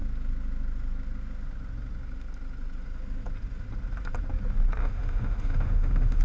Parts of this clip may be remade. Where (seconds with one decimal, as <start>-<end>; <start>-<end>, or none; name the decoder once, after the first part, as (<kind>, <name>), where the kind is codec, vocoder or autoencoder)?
4.8-6.2 (autoencoder, DAC-VAE)